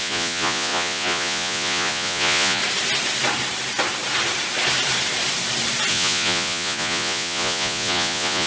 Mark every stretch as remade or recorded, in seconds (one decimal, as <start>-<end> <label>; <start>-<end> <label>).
0.0-2.6 remade; 2.6-5.9 recorded; 5.9-8.5 remade